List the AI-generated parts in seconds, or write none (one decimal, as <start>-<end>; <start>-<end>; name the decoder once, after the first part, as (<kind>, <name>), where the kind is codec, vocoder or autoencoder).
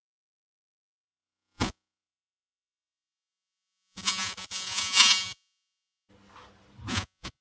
0.0-6.1 (vocoder, Vocos); 6.9-7.4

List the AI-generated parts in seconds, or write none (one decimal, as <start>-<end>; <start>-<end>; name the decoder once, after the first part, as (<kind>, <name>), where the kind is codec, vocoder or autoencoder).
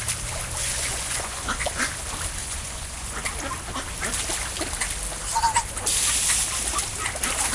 0.6-1.9 (vocoder, Vocos); 2.4-3.2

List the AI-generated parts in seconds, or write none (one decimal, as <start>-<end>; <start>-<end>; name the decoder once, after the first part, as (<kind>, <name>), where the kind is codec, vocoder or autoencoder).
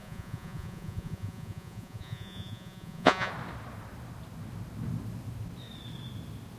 0.0-3.3 (vocoder, Vocos)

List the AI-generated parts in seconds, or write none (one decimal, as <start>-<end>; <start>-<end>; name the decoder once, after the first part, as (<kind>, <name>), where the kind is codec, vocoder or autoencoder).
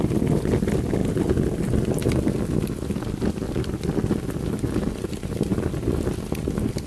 1.0-1.6 (vocoder, Vocos)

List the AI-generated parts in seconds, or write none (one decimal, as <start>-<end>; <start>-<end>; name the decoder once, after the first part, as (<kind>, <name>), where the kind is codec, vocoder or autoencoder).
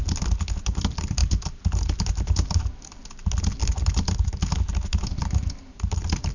none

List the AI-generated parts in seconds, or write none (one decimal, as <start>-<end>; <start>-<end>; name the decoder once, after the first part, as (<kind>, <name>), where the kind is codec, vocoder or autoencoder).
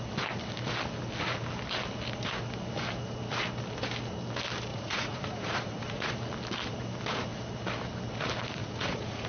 4.7-6.1 (vocoder, Vocos); 8.6-9.3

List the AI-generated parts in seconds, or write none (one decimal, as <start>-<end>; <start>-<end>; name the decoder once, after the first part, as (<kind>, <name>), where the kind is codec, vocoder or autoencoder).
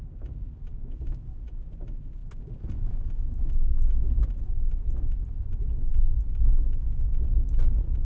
none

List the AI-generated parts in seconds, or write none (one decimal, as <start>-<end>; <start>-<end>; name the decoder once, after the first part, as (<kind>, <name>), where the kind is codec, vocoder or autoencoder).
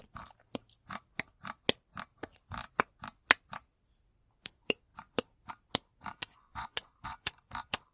6.1-7.3 (vocoder, Vocos)